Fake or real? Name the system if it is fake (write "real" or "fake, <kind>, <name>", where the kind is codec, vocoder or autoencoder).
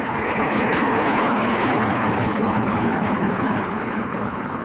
fake, codec, HILCodec